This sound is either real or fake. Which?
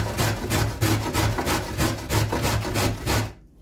real